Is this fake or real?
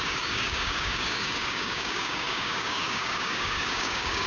fake